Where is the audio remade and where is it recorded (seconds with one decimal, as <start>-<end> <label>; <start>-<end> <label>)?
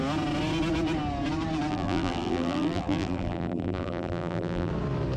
0.0-1.7 recorded; 1.7-4.7 remade; 4.7-5.2 recorded